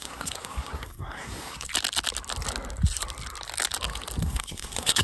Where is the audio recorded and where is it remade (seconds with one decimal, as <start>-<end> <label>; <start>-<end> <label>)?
0.0-1.7 remade; 1.7-4.2 recorded; 4.2-5.0 remade